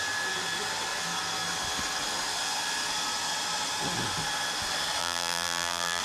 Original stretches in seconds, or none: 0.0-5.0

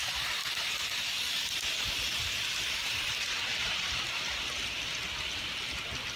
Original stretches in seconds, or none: 0.0-2.8; 4.4-6.2

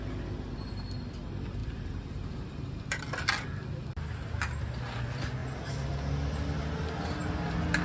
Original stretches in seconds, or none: 0.0-1.6; 3.0-7.8